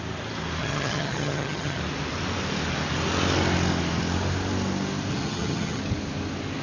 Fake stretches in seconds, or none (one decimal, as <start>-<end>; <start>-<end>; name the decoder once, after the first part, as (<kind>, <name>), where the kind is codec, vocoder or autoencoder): 0.6-1.8 (vocoder, HiFi-GAN); 5.1-5.8